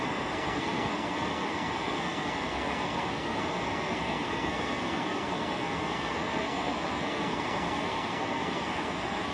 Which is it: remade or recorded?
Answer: remade